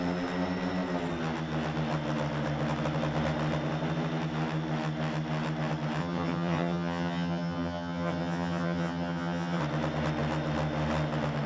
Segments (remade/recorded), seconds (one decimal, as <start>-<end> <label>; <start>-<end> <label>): 0.0-6.0 recorded; 6.0-9.6 remade; 9.6-11.5 recorded